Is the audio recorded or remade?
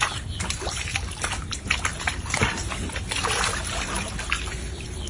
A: remade